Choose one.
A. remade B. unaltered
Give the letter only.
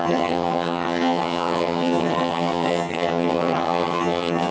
A